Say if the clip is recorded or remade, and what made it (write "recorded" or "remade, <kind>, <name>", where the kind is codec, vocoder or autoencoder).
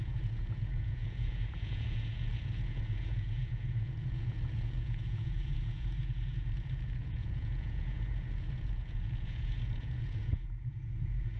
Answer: remade, vocoder, Vocos